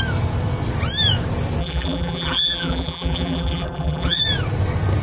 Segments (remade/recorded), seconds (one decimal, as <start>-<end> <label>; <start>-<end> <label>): 0.0-1.6 recorded; 1.6-4.2 remade; 4.2-5.0 recorded